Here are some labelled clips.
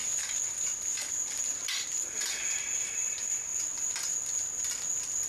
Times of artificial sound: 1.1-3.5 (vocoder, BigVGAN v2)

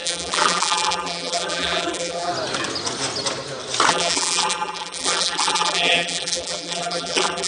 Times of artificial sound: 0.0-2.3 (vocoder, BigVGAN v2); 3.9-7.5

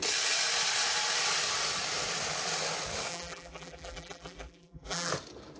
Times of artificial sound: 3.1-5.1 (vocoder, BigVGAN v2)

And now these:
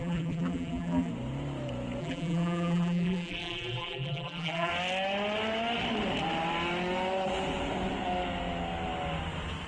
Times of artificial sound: 0.0-1.1 (vocoder, BigVGAN v2); 2.0-4.7